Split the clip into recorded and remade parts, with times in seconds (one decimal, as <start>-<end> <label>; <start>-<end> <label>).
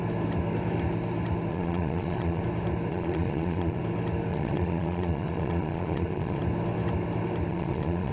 0.0-1.5 recorded; 1.5-2.4 remade; 2.4-2.9 recorded; 2.9-3.8 remade; 3.8-4.3 recorded; 4.3-6.4 remade; 6.4-7.5 recorded; 7.5-8.1 remade